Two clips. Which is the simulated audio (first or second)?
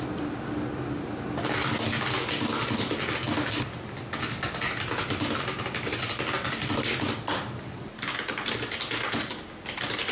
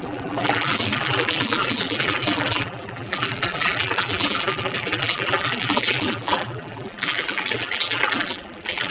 second